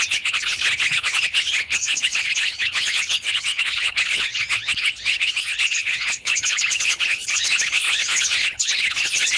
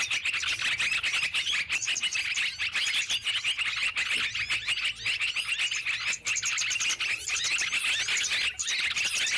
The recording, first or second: second